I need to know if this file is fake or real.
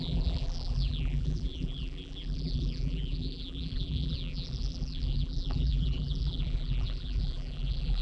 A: fake